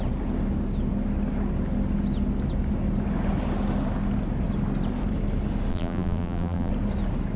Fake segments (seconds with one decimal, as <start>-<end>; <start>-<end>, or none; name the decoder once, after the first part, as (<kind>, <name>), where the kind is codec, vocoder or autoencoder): 5.7-6.7 (vocoder, BigVGAN v2)